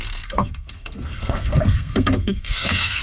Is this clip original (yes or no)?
no